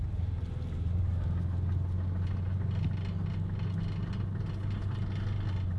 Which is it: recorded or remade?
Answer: recorded